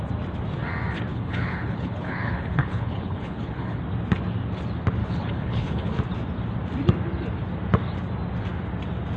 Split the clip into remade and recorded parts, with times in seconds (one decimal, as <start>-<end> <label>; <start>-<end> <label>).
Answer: 0.0-1.1 recorded; 1.1-3.8 remade; 3.8-5.0 recorded; 5.0-6.0 remade; 6.0-9.2 recorded